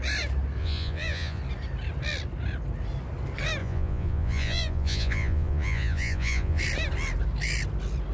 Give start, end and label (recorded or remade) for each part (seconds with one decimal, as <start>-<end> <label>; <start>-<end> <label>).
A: 0.0-0.6 recorded; 0.6-1.4 remade; 1.4-3.6 recorded; 3.6-6.6 remade; 6.6-8.1 recorded